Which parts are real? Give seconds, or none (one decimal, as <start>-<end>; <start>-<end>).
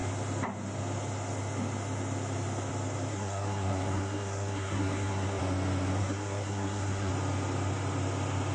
0.0-3.1; 5.4-6.0; 7.1-8.5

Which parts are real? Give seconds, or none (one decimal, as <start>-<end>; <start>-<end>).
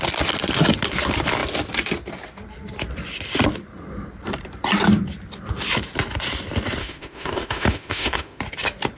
0.0-6.8; 8.4-9.0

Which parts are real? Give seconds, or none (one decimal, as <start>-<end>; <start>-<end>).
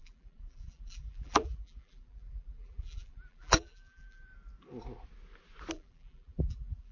4.3-5.7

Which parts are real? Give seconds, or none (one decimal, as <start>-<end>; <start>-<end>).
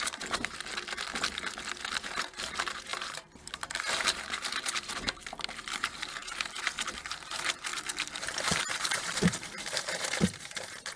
0.7-2.0; 7.7-8.2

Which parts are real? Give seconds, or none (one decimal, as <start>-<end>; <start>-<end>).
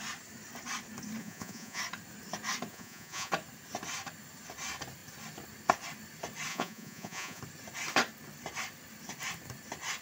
0.0-1.2; 1.8-2.7; 3.3-6.5; 7.4-10.0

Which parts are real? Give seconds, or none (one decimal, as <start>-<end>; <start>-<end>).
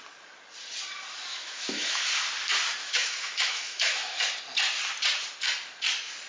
0.0-1.3; 2.0-2.8; 4.2-6.3